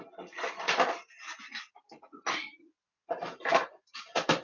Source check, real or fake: real